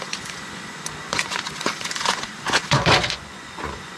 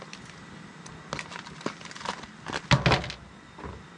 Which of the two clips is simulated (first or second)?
first